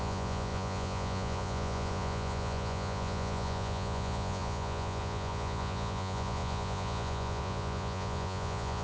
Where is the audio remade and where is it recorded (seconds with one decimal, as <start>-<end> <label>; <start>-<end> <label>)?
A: 0.0-8.8 remade

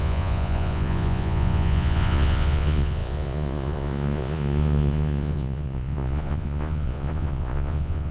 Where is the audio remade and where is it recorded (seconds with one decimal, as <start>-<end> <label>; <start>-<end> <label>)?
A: 0.0-8.1 remade

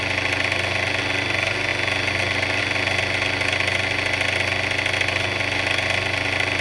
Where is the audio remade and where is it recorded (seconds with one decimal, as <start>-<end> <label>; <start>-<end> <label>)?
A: 0.0-6.6 recorded

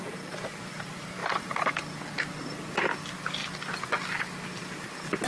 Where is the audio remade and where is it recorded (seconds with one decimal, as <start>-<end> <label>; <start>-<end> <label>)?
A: 0.0-1.2 recorded; 1.2-1.7 remade; 1.7-5.3 recorded

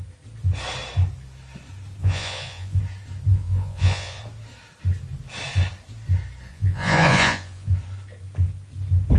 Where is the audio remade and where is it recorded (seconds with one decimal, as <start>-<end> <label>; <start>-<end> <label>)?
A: 0.0-2.0 recorded; 2.0-2.8 remade; 2.8-3.3 recorded; 3.3-4.2 remade; 4.2-6.5 recorded; 6.5-7.7 remade; 7.7-9.2 recorded

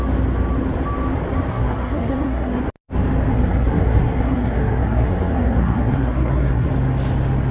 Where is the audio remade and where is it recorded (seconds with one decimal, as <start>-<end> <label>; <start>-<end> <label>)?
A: 0.0-1.5 recorded; 1.5-2.6 remade; 2.6-3.3 recorded; 3.3-6.7 remade; 6.7-7.5 recorded